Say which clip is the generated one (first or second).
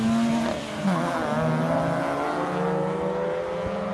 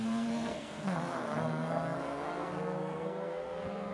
second